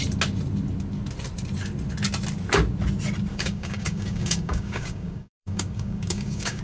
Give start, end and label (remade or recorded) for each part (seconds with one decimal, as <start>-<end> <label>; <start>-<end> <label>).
0.0-3.3 recorded; 3.3-6.6 remade